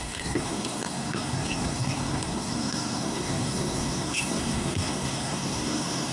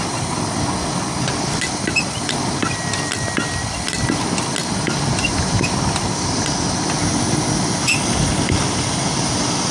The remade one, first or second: first